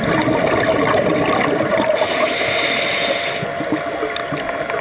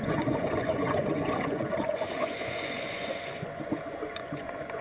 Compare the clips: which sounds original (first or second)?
first